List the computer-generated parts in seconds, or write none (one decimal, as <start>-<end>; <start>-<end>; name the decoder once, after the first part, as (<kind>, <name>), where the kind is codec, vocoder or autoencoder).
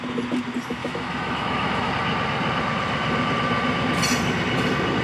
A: 0.8-1.9 (autoencoder, DAC-VAE)